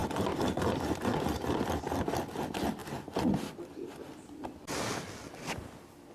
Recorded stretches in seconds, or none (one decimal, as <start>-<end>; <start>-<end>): 0.0-6.1